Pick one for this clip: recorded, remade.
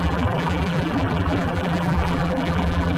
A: remade